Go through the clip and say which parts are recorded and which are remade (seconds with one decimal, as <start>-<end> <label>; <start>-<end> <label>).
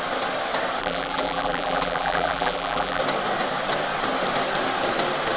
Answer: 0.0-0.8 recorded; 0.8-3.0 remade; 3.0-5.4 recorded